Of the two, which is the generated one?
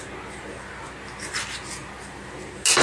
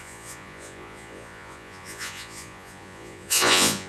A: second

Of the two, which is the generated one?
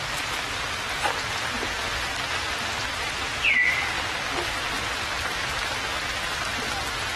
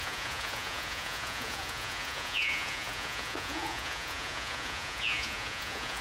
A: second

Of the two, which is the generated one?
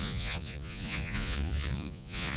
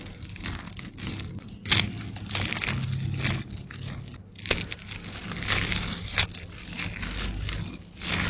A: first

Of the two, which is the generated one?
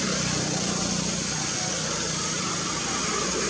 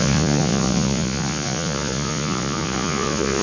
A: second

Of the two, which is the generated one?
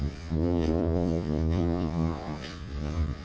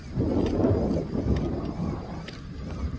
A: first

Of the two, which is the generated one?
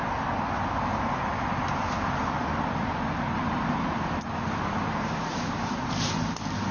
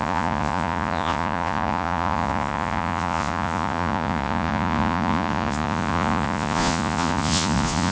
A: second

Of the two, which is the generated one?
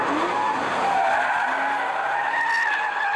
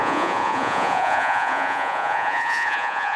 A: second